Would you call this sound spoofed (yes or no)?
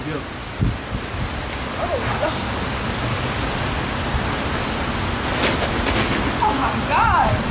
no